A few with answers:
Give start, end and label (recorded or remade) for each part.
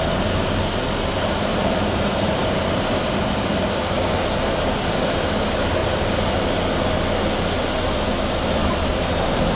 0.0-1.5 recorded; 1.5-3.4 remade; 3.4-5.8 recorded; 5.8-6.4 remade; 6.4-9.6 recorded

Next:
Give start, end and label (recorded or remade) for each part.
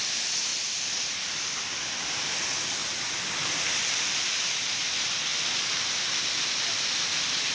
0.0-0.5 recorded; 0.5-1.9 remade; 1.9-2.8 recorded; 2.8-4.6 remade; 4.6-5.3 recorded; 5.3-6.3 remade; 6.3-7.5 recorded